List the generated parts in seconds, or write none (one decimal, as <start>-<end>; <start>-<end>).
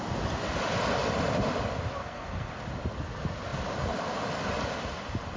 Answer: 2.0-2.5